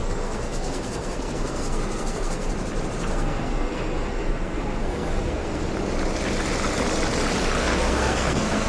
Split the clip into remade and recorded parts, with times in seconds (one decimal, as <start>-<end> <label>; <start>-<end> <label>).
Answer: 0.0-2.5 remade; 2.5-3.1 recorded; 3.1-5.7 remade; 5.7-7.6 recorded; 7.6-8.7 remade